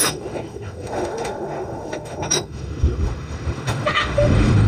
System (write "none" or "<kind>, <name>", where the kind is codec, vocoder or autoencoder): autoencoder, DAC-VAE